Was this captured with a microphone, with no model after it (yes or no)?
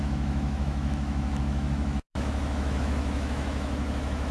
no